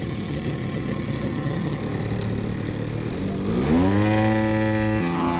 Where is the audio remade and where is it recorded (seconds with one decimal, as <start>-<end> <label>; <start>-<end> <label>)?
0.0-1.8 remade; 1.8-5.0 recorded; 5.0-5.4 remade